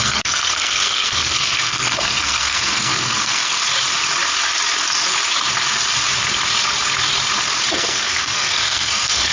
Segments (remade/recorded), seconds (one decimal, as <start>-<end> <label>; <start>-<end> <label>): 0.0-3.6 remade; 3.6-7.7 recorded; 7.7-9.3 remade